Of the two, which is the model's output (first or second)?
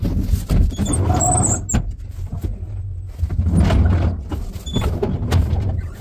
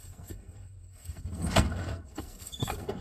second